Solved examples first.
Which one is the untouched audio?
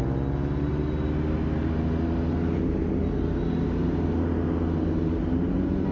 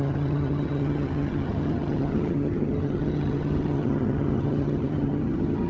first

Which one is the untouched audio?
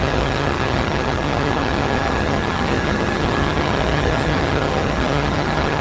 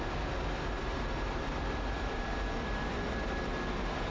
second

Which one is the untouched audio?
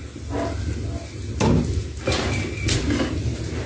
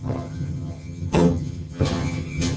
first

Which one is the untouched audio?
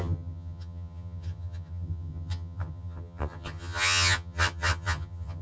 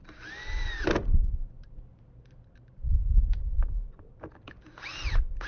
second